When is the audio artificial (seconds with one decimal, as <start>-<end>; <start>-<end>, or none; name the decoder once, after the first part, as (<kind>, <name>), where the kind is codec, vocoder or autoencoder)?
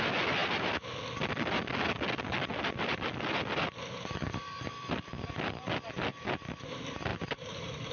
0.4-1.0 (vocoder, BigVGAN v2); 2.5-6.5; 7.1-7.9